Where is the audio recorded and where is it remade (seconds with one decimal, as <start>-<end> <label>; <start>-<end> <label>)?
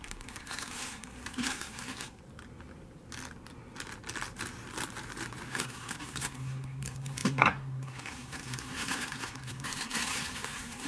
0.0-2.2 remade; 2.2-5.5 recorded; 5.5-10.9 remade